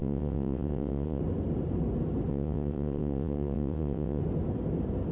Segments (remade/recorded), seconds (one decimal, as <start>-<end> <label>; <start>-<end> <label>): 0.0-1.2 remade; 1.2-2.3 recorded; 2.3-4.2 remade; 4.2-5.1 recorded